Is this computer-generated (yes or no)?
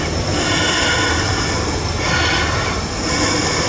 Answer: no